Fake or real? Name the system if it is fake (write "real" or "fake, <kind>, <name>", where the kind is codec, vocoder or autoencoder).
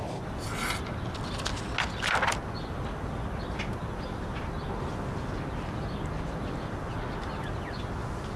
real